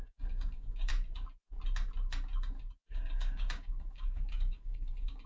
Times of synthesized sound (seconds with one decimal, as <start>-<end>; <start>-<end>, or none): 0.0-0.9; 2.8-5.3